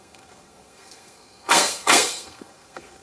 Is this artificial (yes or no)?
yes